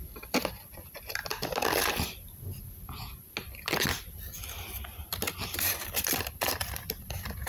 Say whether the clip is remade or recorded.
recorded